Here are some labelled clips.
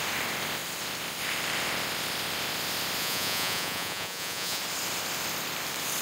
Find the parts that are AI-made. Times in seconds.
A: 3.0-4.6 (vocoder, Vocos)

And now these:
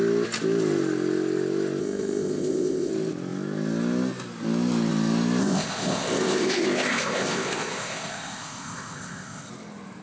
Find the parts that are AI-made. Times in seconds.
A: 1.8-2.9 (codec, ZipCodec); 5.4-9.5